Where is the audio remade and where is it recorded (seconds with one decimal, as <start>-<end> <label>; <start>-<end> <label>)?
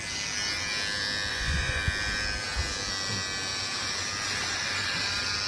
0.0-1.3 recorded; 1.3-1.8 remade; 1.8-5.5 recorded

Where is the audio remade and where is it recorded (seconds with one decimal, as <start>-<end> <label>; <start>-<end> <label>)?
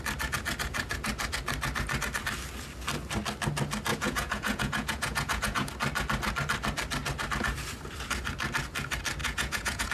0.0-3.9 recorded; 3.9-5.7 remade; 5.7-9.2 recorded; 9.2-9.9 remade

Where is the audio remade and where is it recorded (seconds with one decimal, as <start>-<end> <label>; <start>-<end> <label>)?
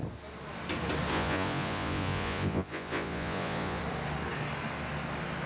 0.0-1.1 recorded; 1.1-3.8 remade; 3.8-5.5 recorded